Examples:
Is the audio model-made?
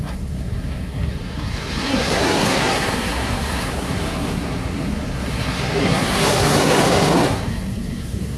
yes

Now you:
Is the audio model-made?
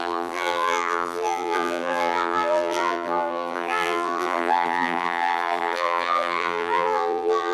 yes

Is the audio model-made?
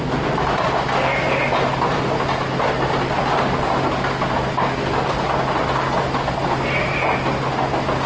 no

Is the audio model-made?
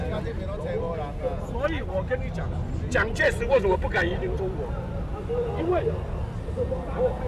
no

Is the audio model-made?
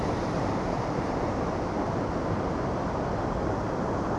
no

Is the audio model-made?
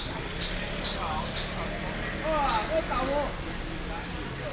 no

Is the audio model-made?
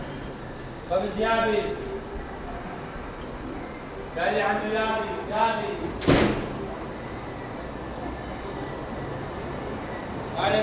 no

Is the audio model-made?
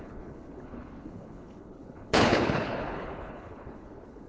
yes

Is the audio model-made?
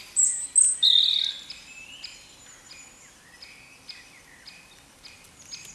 no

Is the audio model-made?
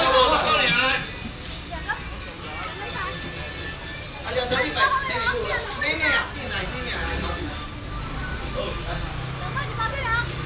no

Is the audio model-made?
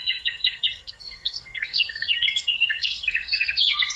yes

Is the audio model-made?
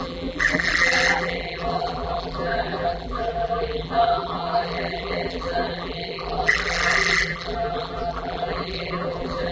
yes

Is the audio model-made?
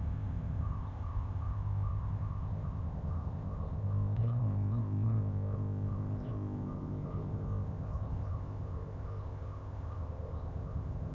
yes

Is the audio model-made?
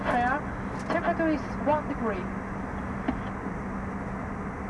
no